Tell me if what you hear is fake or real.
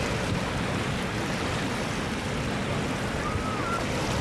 real